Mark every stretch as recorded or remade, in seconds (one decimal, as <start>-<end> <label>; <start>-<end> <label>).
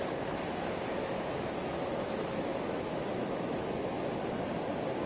0.0-1.0 recorded; 1.0-4.1 remade; 4.1-5.1 recorded